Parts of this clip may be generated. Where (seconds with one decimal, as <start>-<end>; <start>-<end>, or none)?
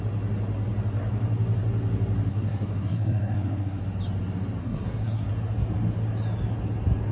2.3-3.8; 4.6-5.3